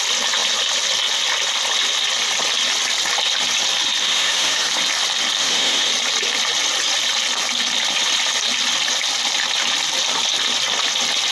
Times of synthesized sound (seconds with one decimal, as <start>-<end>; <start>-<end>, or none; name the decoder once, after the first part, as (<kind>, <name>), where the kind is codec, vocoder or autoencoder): 4.0-4.7 (autoencoder, DAC-VAE); 5.4-5.9